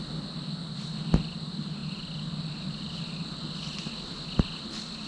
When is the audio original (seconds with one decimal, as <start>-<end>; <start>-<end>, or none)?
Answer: 0.0-1.8; 3.0-5.1